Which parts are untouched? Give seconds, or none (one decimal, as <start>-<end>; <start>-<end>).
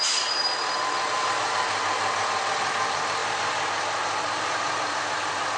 0.0-3.2